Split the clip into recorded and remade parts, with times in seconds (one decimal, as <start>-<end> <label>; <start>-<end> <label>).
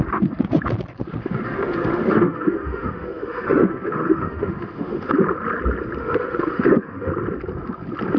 0.0-1.2 recorded; 1.2-5.1 remade; 5.1-6.0 recorded; 6.0-7.1 remade; 7.1-8.2 recorded